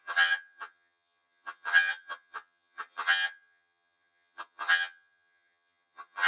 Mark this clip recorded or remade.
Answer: remade